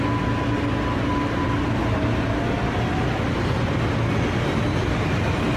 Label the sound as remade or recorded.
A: recorded